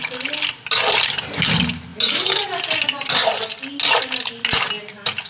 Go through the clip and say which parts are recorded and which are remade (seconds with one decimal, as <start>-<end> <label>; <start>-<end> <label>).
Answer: 0.0-5.3 recorded